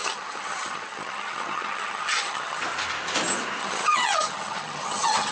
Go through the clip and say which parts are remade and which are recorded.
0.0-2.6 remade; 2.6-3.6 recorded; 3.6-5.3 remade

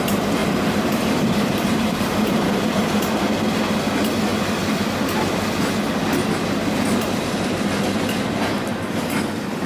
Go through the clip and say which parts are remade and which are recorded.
0.0-0.4 recorded; 0.4-3.0 remade; 3.0-9.7 recorded

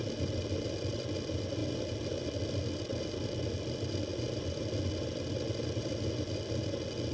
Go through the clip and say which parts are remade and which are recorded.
0.0-7.1 recorded

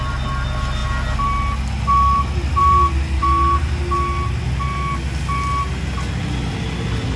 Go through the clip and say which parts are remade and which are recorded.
0.0-7.2 recorded

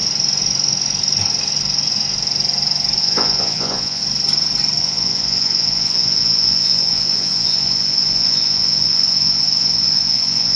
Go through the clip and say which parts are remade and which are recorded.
0.0-3.0 recorded; 3.0-4.0 remade; 4.0-4.8 recorded; 4.8-10.6 remade

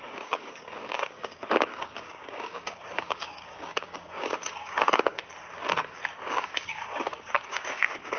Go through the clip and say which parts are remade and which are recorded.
0.0-5.2 remade; 5.2-6.3 recorded; 6.3-8.2 remade